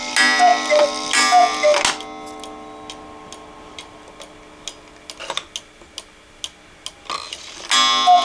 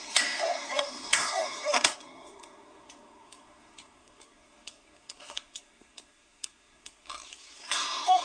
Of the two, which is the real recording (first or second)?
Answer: first